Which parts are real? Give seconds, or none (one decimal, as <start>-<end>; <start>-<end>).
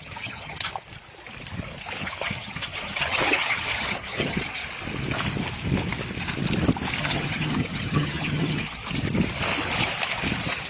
0.7-2.0; 4.6-7.0; 8.8-10.7